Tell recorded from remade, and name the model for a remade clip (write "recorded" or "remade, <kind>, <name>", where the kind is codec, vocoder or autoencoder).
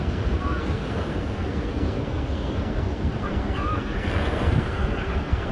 remade, codec, SNAC